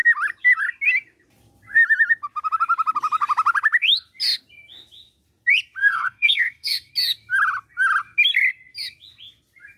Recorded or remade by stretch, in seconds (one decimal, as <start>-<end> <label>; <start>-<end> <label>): 0.0-5.8 recorded; 5.8-6.9 remade; 6.9-9.8 recorded